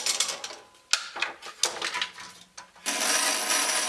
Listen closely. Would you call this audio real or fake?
real